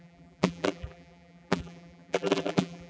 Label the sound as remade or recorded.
remade